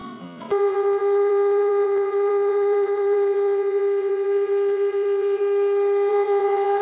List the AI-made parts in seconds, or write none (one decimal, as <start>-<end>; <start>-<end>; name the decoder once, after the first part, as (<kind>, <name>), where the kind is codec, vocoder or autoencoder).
0.0-5.4 (vocoder, Vocos); 6.1-6.8